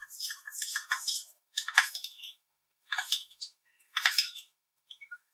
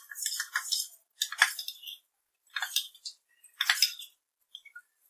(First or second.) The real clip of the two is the second